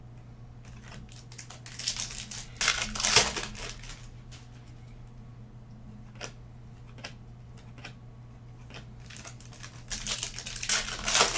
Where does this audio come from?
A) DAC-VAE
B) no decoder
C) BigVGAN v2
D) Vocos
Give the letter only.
B